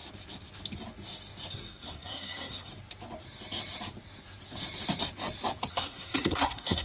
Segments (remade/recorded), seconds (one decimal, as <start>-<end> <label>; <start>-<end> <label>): 0.0-1.5 recorded; 1.5-2.7 remade; 2.7-5.7 recorded; 5.7-6.8 remade

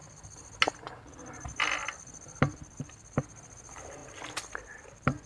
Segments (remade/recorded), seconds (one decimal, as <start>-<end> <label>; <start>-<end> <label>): 0.0-5.3 recorded

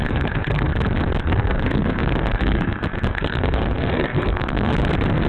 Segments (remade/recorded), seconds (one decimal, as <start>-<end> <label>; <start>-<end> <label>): 0.0-0.7 remade; 0.7-1.2 recorded; 1.2-4.7 remade; 4.7-5.3 recorded

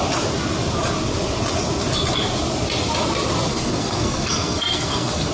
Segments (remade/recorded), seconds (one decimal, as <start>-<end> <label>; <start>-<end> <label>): 0.0-3.5 recorded; 3.5-5.3 remade

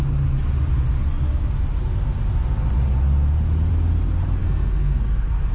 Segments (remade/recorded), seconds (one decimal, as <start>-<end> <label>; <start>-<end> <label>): 0.0-4.4 recorded; 4.4-5.5 remade

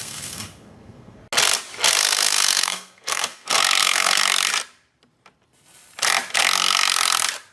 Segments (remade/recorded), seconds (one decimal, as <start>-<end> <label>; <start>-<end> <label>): 0.0-1.2 remade; 1.2-2.0 recorded; 2.0-4.2 remade; 4.2-7.5 recorded